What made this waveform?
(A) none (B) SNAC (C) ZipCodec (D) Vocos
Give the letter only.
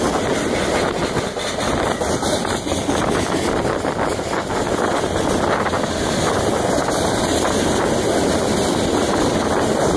A